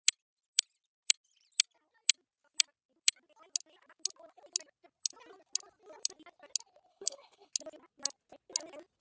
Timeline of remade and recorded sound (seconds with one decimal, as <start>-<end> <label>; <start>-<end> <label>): 0.0-6.9 recorded; 6.9-7.5 remade; 7.5-9.0 recorded